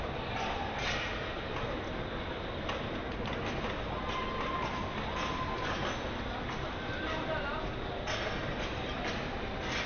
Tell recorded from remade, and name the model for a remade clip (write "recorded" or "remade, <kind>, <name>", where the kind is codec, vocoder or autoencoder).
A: recorded